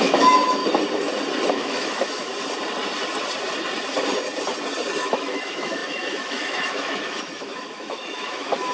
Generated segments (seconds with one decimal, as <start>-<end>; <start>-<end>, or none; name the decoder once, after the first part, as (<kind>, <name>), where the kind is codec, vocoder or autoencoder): 0.0-0.6 (autoencoder, DAC-VAE); 1.5-2.3; 5.0-8.7